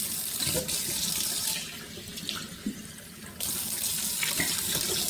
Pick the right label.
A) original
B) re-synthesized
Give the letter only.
A